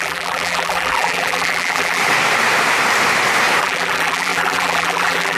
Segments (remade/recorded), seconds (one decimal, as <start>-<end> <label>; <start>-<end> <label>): 0.0-2.0 remade; 2.0-3.6 recorded; 3.6-5.4 remade